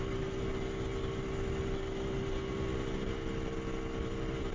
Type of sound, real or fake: real